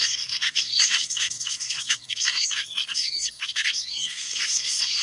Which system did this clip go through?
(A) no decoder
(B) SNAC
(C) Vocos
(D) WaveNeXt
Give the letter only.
B